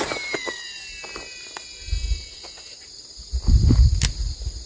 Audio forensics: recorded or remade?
recorded